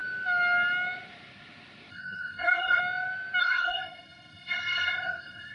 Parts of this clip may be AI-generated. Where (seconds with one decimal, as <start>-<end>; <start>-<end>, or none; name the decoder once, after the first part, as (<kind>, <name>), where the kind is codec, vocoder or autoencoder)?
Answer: 1.9-2.8 (codec, SNAC); 3.4-5.5